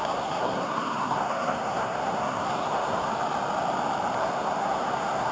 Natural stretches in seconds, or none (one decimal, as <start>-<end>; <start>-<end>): 3.1-4.2